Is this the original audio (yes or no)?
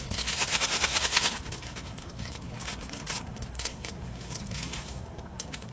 no